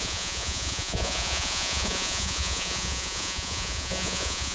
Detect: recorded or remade remade